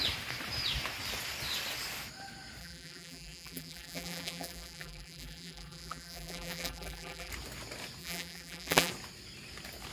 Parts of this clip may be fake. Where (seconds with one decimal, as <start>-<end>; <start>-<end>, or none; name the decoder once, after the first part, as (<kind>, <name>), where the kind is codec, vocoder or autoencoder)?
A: 2.6-7.3 (vocoder, BigVGAN v2); 8.0-8.9